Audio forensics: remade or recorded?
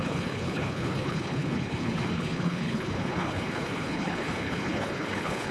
remade